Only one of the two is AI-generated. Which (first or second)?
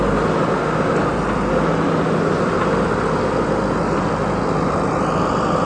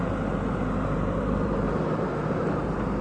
second